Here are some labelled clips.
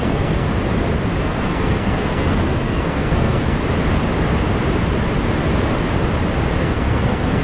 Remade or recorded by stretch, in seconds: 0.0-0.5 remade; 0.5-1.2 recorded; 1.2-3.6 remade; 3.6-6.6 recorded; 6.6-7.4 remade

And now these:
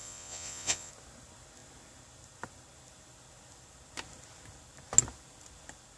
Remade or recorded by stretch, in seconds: 0.0-0.9 remade; 0.9-6.0 recorded

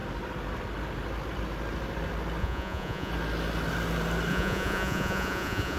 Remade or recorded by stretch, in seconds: 0.0-2.4 recorded; 2.4-3.1 remade; 3.1-4.3 recorded; 4.3-5.8 remade

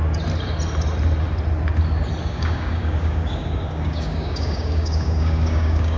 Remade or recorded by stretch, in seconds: 0.0-2.2 recorded; 2.2-6.0 remade

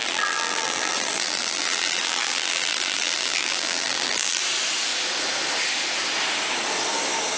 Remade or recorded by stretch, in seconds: 0.0-4.4 remade; 4.4-7.4 recorded

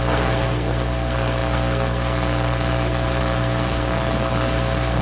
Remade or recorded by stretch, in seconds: 0.0-5.0 remade

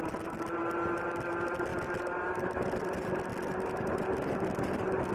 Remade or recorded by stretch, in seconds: 0.0-5.1 recorded

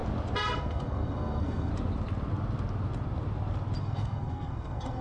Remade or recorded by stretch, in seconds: 0.0-0.5 recorded; 0.5-1.7 remade; 1.7-3.8 recorded; 3.8-5.0 remade